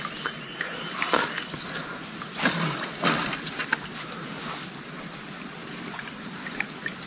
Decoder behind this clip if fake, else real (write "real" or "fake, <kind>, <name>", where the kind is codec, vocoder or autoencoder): real